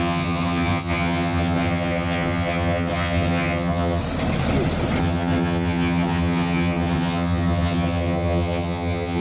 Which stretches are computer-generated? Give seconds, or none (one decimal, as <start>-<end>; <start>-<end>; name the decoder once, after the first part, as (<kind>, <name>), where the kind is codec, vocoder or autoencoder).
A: 0.0-4.0 (vocoder, HiFi-GAN); 5.0-9.2